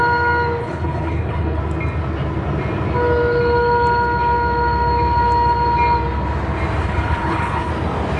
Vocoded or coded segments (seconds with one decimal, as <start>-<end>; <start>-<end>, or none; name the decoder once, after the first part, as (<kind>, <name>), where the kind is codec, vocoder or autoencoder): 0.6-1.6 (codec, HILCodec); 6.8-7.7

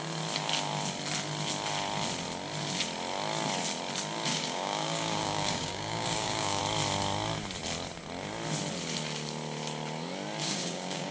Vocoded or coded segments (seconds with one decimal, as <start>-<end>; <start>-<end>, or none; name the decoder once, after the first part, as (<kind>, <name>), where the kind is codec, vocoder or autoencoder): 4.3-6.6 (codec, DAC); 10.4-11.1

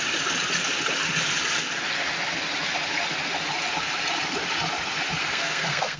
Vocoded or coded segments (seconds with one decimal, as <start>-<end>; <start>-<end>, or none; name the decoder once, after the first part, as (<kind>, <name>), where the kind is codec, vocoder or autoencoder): 5.2-6.0 (codec, SNAC)

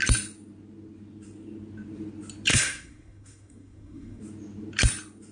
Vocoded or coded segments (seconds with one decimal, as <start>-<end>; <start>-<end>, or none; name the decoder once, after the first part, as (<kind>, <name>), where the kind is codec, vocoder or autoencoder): 2.5-4.2 (codec, SNAC)